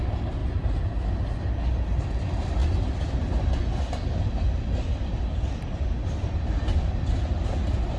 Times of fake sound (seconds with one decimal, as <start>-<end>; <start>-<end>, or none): none